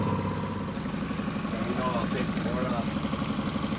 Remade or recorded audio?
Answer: recorded